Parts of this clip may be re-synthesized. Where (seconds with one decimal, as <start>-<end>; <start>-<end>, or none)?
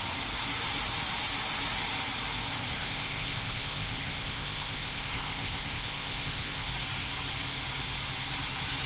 2.7-6.7